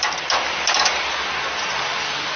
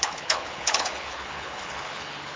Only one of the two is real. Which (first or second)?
first